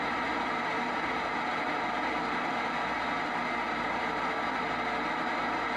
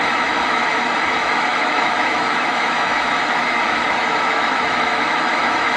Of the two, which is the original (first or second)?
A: first